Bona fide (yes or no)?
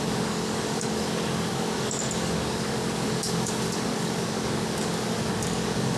no